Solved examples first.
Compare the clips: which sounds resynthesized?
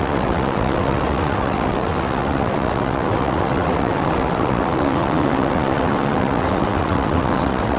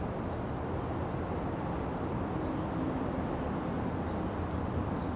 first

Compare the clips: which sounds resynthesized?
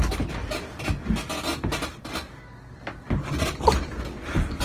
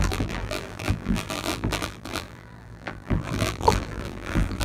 second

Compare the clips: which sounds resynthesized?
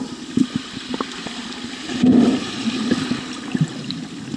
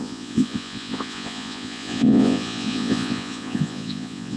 second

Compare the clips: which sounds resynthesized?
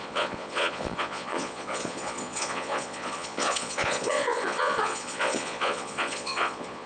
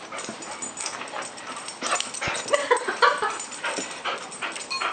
first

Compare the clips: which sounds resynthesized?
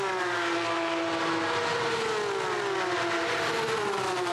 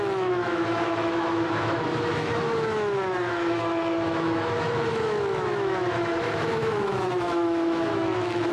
second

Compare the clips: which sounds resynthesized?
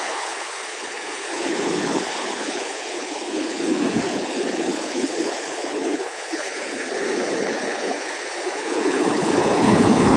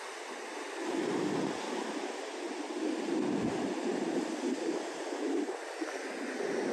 first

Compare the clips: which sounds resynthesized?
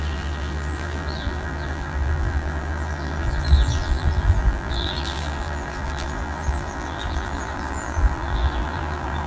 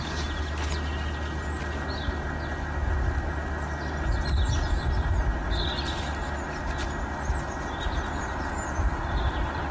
first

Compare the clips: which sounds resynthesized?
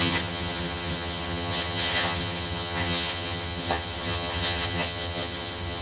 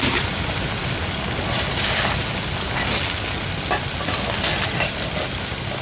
first